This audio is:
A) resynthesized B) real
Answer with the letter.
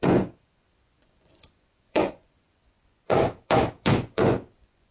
A